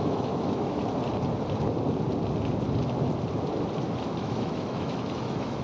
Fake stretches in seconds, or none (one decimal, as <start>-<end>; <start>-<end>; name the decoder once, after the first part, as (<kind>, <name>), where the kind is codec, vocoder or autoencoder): 0.0-0.8 (autoencoder, DAC-VAE); 4.2-5.6